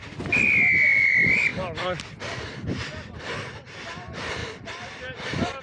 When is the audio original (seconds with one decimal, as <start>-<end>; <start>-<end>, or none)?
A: 0.0-4.4